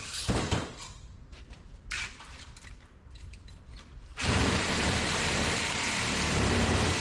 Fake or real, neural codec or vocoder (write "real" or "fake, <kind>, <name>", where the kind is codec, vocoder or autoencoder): fake, vocoder, BigVGAN v2